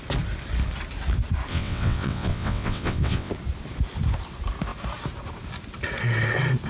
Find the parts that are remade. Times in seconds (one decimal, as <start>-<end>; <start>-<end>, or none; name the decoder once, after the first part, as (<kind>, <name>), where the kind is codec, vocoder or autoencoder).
1.5-3.3 (vocoder, WaveNeXt)